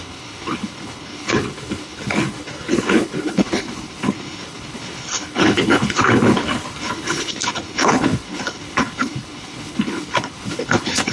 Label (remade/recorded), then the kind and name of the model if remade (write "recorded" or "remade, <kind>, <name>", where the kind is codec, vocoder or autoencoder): remade, codec, HILCodec